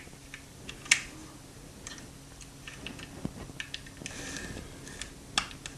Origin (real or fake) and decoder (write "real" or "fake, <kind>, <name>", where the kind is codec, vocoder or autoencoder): real